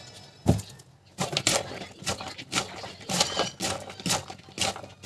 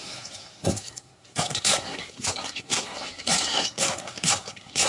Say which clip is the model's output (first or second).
second